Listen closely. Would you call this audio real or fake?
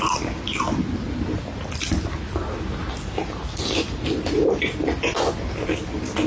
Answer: real